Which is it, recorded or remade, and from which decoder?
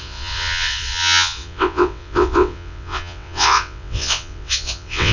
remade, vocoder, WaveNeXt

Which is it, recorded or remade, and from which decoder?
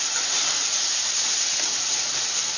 recorded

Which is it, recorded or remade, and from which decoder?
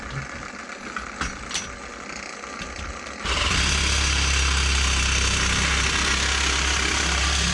recorded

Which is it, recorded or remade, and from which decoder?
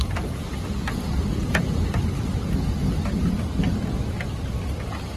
recorded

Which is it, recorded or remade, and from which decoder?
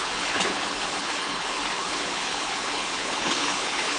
remade, codec, HILCodec